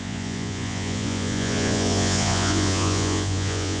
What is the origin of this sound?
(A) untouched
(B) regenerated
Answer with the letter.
B